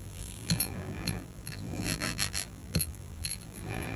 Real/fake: fake